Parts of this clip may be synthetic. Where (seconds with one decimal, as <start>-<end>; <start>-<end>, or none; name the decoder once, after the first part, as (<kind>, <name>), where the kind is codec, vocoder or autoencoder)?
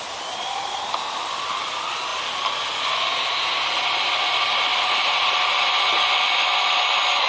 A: 4.7-6.3 (vocoder, BigVGAN v2)